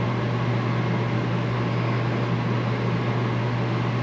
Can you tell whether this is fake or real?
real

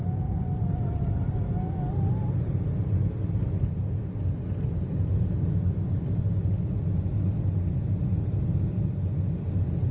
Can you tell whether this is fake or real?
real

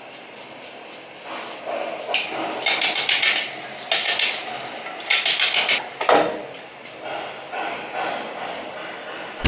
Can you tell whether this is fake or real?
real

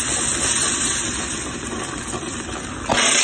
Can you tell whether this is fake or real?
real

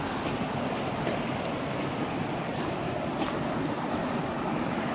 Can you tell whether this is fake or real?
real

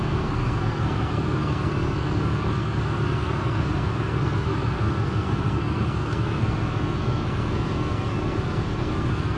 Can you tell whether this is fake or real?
fake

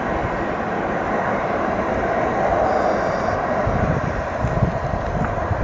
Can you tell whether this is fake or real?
real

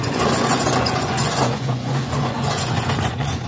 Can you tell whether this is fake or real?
fake